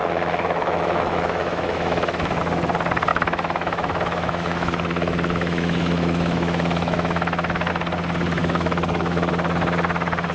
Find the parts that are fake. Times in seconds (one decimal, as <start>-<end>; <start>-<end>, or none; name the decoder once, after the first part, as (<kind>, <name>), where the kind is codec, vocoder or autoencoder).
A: 0.0-2.4 (autoencoder, DAC-VAE); 3.1-7.7; 8.4-9.3